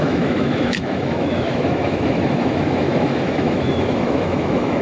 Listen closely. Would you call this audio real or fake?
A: fake